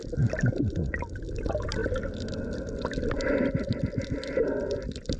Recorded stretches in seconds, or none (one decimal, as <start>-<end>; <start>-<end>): 0.0-5.2

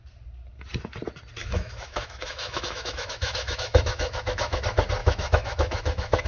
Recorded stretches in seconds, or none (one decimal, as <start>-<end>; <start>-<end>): 0.0-1.4; 4.6-5.0

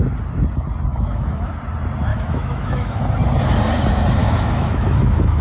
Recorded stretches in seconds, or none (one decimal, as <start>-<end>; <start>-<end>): 0.0-0.9; 1.5-2.1; 3.0-4.2